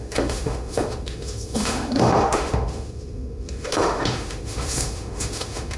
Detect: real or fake fake